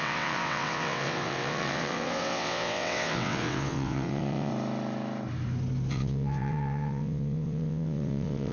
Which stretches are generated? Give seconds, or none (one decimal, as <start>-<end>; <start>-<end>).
0.0-4.5; 5.9-8.5